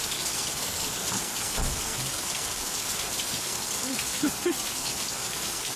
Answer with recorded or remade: remade